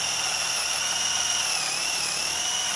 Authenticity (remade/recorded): remade